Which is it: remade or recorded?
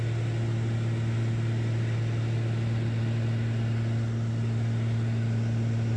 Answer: recorded